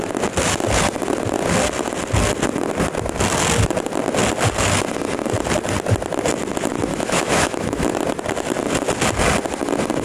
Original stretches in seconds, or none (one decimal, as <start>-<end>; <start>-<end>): 0.0-6.9; 7.9-10.0